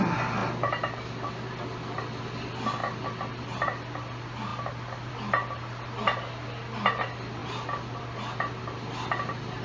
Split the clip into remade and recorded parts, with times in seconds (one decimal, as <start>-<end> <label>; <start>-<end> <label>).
0.0-9.6 recorded